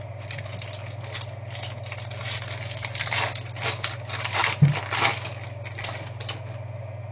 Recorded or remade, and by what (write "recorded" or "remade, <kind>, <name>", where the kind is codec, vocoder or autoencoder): recorded